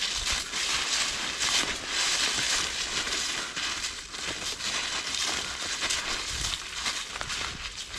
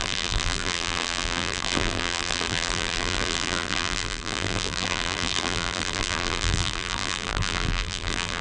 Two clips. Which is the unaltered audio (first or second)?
first